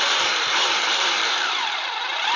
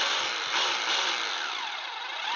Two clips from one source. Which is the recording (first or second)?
second